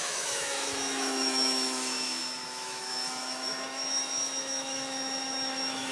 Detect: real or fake fake